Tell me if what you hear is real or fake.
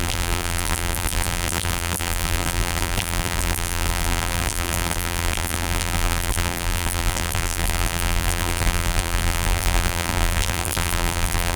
fake